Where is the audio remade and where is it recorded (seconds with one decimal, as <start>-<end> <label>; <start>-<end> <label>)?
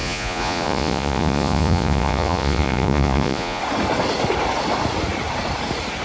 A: 0.0-3.6 remade; 3.6-6.0 recorded